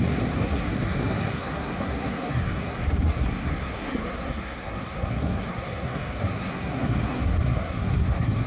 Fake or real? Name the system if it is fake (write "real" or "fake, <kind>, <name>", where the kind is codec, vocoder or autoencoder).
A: fake, codec, SNAC